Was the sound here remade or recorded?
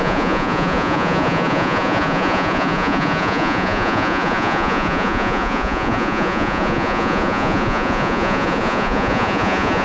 remade